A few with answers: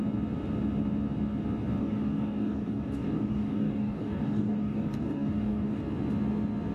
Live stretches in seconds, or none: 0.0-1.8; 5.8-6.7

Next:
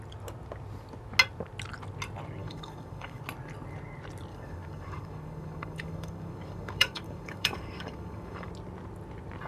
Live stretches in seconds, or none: 0.0-2.4; 3.2-4.3; 8.5-9.5

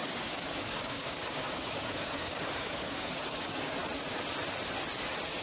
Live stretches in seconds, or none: 3.8-5.4

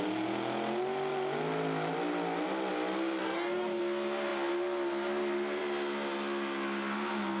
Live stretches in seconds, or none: 0.0-3.2; 3.8-7.4